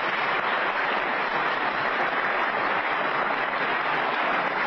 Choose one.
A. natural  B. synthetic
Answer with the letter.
A